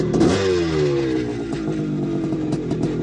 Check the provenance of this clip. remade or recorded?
recorded